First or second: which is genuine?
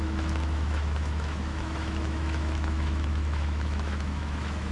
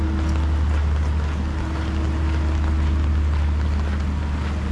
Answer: second